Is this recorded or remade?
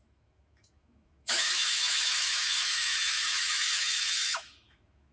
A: remade